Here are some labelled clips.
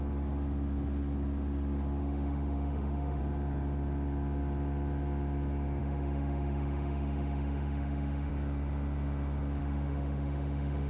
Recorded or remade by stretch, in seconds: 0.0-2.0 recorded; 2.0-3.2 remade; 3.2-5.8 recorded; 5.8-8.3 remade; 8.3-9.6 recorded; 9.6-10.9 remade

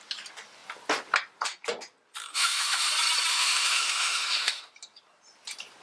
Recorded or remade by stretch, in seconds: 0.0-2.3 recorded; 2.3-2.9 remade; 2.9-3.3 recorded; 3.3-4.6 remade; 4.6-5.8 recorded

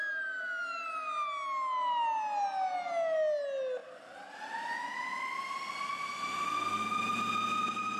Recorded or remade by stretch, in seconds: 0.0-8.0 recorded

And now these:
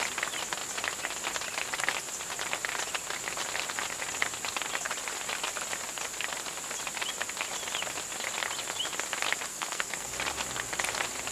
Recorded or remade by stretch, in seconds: 0.0-9.5 recorded; 9.5-10.1 remade; 10.1-11.3 recorded

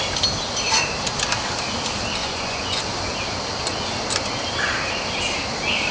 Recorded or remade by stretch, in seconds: 0.0-2.2 recorded; 2.2-2.8 remade; 2.8-5.9 recorded